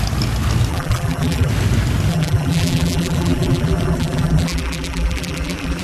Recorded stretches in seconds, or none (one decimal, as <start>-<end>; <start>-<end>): 0.0-0.7; 1.5-2.1